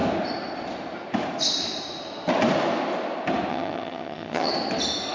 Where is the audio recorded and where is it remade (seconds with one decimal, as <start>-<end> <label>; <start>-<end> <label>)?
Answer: 0.0-3.5 recorded; 3.5-4.5 remade; 4.5-5.1 recorded

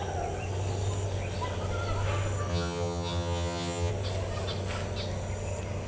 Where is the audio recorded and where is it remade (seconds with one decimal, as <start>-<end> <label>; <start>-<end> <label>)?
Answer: 0.0-2.5 recorded; 2.5-3.9 remade; 3.9-5.9 recorded

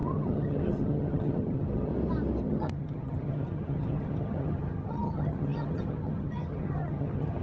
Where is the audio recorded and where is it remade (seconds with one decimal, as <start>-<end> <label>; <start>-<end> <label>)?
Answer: 0.0-1.9 remade; 1.9-2.4 recorded; 2.4-7.4 remade

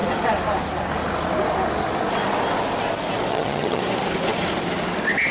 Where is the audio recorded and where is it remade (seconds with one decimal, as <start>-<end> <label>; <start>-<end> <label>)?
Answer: 0.0-3.3 recorded; 3.3-3.8 remade; 3.8-5.3 recorded

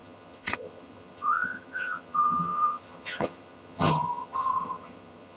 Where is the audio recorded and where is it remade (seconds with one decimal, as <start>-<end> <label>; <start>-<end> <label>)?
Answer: 0.0-5.4 remade

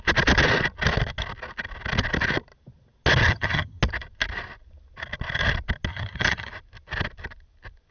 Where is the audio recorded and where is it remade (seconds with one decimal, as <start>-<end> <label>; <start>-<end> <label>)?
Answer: 0.0-3.3 recorded; 3.3-3.8 remade; 3.8-5.9 recorded; 5.9-6.5 remade; 6.5-7.9 recorded

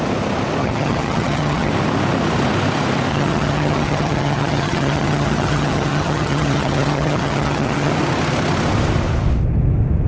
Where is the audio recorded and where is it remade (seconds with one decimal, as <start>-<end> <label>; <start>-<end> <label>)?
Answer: 0.0-0.6 recorded; 0.6-1.7 remade; 1.7-3.1 recorded; 3.1-7.9 remade; 7.9-10.1 recorded

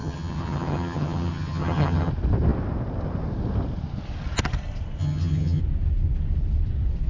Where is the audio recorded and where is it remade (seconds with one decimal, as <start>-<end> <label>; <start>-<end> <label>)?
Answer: 0.0-2.1 remade; 2.1-5.0 recorded; 5.0-5.6 remade; 5.6-7.1 recorded